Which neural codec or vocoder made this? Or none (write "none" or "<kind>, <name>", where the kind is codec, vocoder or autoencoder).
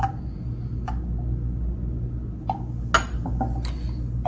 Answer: none